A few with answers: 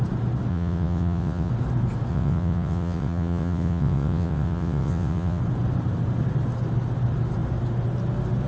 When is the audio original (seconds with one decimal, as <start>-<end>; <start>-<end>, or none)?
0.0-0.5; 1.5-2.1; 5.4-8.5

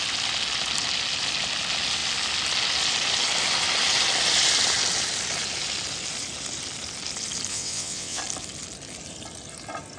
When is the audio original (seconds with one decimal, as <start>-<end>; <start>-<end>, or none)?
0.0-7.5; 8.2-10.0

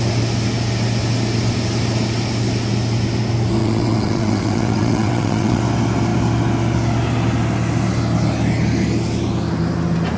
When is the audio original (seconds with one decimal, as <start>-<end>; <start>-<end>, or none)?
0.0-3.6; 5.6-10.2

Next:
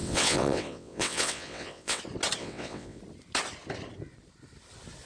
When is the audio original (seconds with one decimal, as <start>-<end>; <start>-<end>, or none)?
2.0-2.4; 3.0-5.1

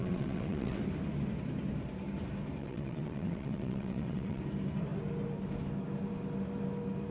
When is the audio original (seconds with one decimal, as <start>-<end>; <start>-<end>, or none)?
0.8-2.6; 4.4-7.1

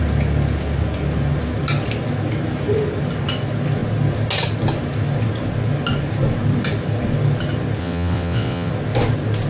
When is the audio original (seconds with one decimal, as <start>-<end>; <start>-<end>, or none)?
0.0-7.8; 8.7-9.5

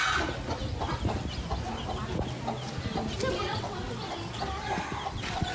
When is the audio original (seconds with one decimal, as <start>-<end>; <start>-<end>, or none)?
0.0-3.3; 3.8-5.1